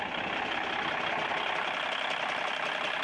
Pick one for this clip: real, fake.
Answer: real